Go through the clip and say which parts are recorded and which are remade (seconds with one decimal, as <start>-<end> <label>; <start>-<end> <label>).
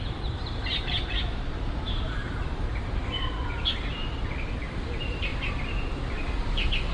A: 0.0-3.0 remade; 3.0-4.6 recorded; 4.6-5.3 remade; 5.3-6.9 recorded